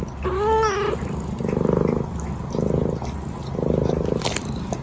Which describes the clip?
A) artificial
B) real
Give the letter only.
B